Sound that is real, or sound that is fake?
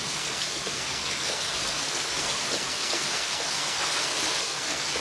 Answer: fake